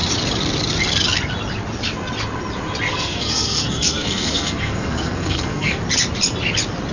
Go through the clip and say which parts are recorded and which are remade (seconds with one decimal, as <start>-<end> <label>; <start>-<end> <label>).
0.0-2.9 recorded; 2.9-5.8 remade; 5.8-6.9 recorded